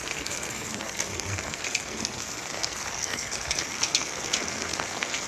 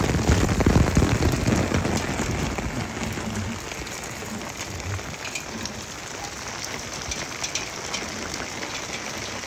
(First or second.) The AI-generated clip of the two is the first